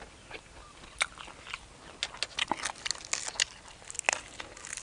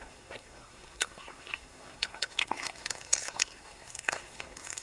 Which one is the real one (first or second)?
first